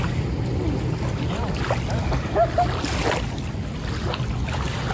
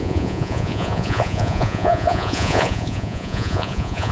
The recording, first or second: first